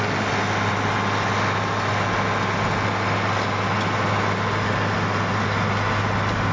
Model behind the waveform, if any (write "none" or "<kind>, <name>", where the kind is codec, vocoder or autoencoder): none